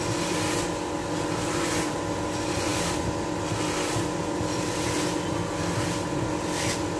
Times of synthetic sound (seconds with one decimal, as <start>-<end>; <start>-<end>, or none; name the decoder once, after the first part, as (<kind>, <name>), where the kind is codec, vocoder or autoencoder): none